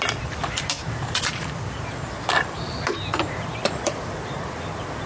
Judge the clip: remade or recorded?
remade